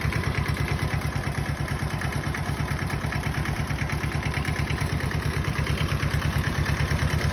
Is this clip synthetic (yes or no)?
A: yes